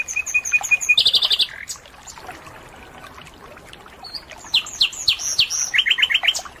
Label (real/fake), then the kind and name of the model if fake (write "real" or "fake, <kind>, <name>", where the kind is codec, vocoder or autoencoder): real